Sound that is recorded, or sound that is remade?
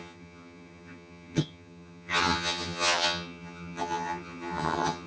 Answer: remade